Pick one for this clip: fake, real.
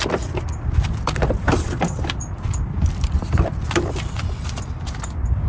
fake